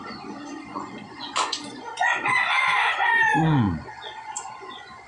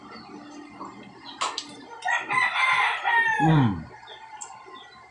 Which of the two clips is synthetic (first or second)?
first